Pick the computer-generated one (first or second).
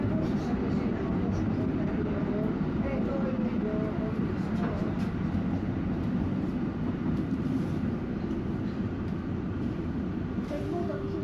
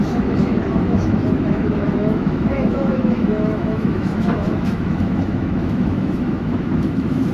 second